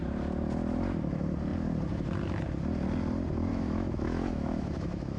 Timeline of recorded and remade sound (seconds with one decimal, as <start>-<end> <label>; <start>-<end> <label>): 0.0-3.5 recorded; 3.5-5.2 remade